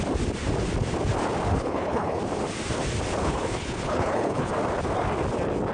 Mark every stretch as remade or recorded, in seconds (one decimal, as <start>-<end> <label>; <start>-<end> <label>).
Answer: 0.0-1.5 recorded; 1.5-2.2 remade; 2.2-3.2 recorded; 3.2-4.5 remade; 4.5-5.7 recorded